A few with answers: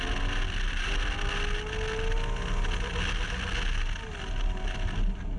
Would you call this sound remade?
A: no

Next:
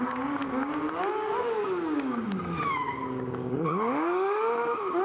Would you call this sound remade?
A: yes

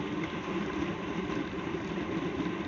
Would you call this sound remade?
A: no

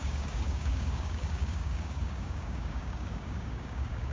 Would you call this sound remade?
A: yes